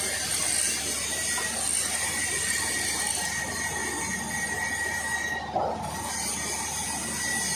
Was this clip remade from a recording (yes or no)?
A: no